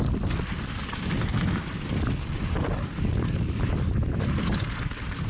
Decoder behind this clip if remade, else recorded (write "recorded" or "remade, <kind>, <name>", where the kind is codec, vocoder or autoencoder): recorded